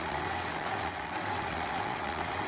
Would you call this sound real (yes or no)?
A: no